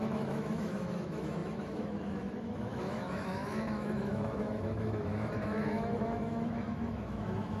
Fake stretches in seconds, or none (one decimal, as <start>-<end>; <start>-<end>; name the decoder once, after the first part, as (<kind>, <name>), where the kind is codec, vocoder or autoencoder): 0.0-7.6 (autoencoder, DAC-VAE)